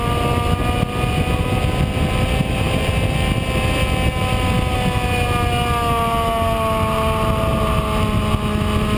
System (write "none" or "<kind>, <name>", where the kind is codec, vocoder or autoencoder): none